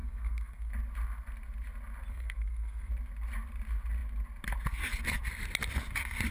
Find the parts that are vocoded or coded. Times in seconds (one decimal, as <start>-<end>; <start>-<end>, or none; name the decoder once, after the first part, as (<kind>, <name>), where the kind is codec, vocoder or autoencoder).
0.0-0.7 (codec, SNAC); 2.1-2.9